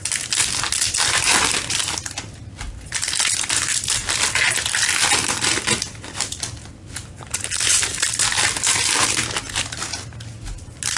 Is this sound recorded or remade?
recorded